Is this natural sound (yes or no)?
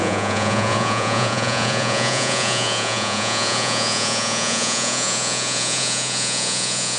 no